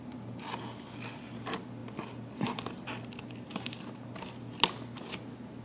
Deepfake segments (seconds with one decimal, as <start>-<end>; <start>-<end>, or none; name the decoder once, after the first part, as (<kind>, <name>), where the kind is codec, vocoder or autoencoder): none